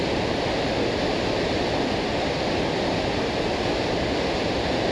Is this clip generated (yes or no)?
no